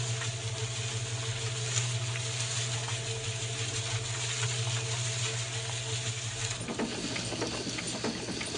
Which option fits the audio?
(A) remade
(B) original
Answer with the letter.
B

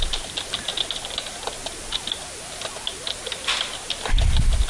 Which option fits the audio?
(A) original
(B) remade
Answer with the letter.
A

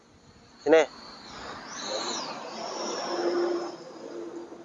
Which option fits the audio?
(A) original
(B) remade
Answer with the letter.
A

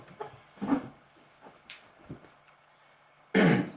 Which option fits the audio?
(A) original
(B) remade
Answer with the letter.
A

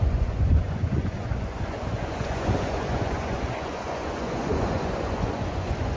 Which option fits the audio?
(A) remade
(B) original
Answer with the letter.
A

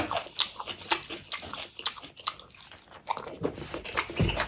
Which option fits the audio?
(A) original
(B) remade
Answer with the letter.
A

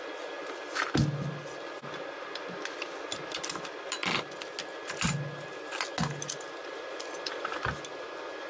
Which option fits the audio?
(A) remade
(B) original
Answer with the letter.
B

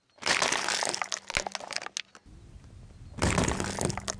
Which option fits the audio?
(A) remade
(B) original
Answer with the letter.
B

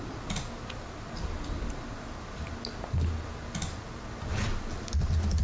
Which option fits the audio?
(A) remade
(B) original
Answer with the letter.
B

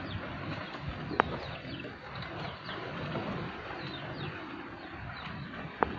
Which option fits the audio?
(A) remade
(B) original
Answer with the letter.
B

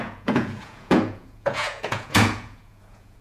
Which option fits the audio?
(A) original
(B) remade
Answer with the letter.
B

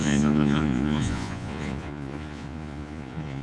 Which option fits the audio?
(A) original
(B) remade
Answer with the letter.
B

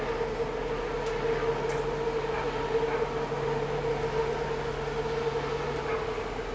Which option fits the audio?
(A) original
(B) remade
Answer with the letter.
A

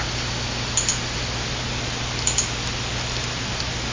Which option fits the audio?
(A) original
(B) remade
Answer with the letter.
A